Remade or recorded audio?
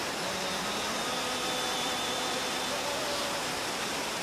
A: recorded